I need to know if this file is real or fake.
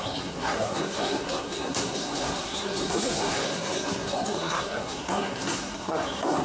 fake